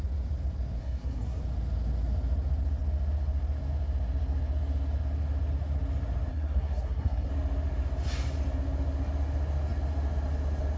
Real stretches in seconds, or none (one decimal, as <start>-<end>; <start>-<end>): 0.0-0.8; 1.4-6.3; 7.3-10.8